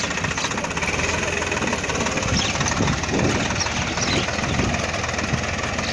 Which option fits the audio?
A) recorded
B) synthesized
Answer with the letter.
A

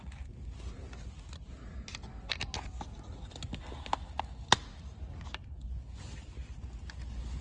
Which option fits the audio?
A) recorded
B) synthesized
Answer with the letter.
A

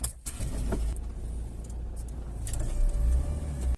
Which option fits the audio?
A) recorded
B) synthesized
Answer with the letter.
A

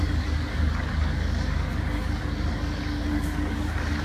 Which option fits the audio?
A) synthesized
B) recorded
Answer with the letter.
A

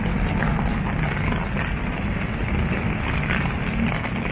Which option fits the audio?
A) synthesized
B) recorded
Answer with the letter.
B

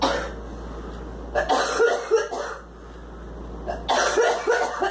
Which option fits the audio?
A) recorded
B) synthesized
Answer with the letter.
A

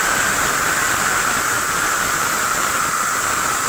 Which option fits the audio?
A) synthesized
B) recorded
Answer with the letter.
B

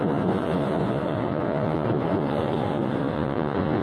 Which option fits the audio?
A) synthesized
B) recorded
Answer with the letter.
A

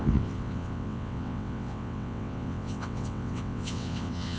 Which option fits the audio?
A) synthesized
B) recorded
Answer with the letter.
A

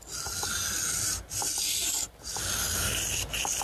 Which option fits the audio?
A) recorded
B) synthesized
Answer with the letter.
A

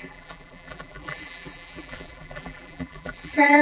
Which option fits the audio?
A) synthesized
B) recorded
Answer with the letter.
A